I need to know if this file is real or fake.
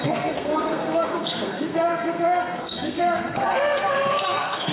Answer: fake